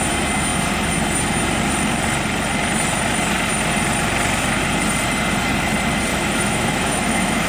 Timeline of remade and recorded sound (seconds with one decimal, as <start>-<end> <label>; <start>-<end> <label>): 0.0-6.1 recorded; 6.1-7.5 remade